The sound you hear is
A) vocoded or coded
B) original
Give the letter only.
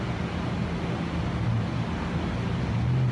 B